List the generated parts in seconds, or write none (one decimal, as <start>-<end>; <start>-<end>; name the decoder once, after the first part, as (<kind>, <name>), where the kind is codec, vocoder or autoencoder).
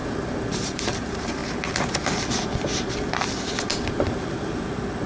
0.0-1.4 (vocoder, BigVGAN v2); 4.5-5.1